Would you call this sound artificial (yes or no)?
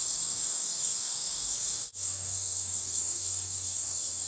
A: yes